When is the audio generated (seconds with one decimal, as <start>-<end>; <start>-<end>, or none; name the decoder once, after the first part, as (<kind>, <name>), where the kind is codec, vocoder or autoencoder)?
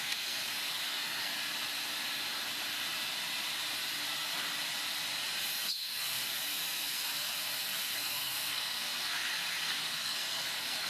0.0-1.3 (codec, SNAC); 5.6-10.9